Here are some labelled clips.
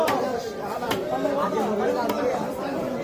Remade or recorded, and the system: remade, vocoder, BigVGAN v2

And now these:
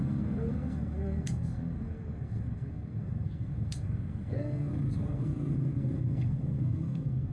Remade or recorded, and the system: remade, codec, SNAC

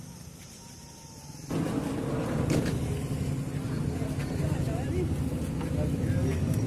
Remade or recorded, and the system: recorded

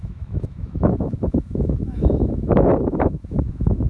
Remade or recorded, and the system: remade, autoencoder, DAC-VAE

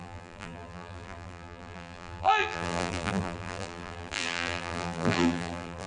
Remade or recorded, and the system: remade, vocoder, BigVGAN v2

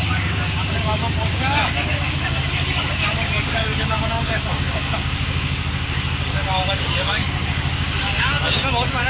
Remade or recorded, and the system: remade, codec, DAC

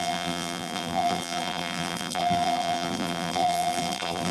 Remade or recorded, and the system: remade, vocoder, BigVGAN v2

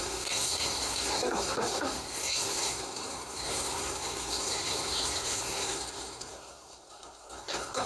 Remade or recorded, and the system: remade, codec, SNAC